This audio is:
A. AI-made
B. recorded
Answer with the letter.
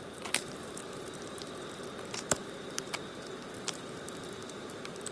A